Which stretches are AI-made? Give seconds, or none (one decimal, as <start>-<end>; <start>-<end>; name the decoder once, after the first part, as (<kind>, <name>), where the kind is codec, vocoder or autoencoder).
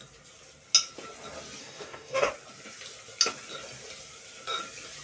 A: 1.6-2.3 (codec, DAC)